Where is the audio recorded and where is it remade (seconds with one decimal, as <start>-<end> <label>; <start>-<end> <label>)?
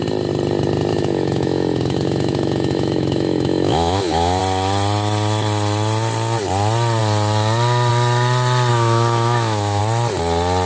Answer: 0.0-0.9 recorded; 0.9-4.4 remade; 4.4-8.7 recorded; 8.7-9.8 remade; 9.8-10.7 recorded